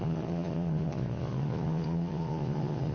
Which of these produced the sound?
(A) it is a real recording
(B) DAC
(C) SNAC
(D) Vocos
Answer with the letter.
D